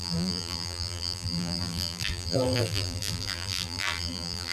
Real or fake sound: fake